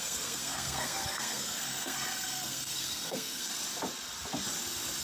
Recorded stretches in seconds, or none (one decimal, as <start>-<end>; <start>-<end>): 3.5-5.0